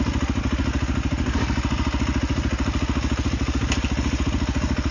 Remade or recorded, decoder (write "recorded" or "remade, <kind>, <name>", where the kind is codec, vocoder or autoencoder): recorded